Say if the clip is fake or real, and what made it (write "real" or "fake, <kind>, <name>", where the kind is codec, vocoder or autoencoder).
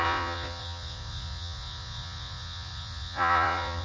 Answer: fake, vocoder, Vocos